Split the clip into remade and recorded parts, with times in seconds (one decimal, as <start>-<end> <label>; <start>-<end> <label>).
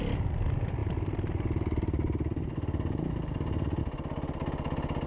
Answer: 0.0-5.1 recorded